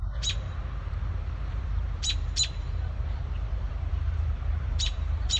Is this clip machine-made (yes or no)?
yes